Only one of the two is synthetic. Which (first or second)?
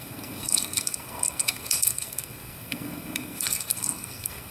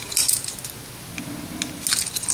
first